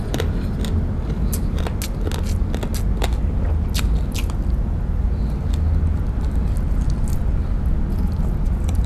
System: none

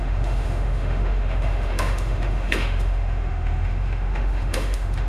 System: autoencoder, DAC-VAE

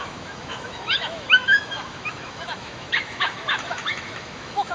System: autoencoder, DAC-VAE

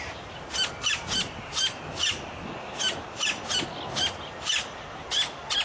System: none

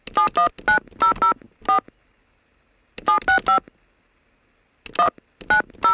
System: none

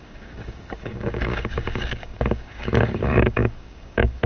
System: codec, DAC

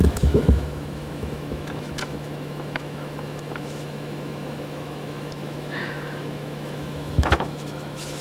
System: autoencoder, DAC-VAE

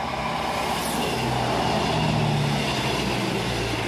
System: none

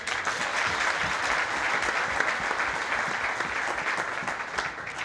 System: none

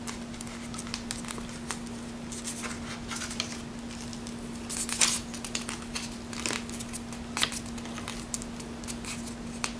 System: none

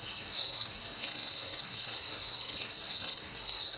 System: codec, SNAC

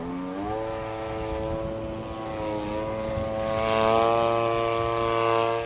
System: none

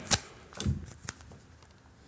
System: none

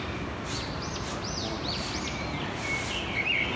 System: none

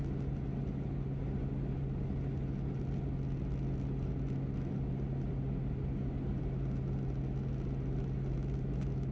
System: none